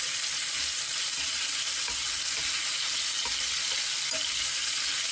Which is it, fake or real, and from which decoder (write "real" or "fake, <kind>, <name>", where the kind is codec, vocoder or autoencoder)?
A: real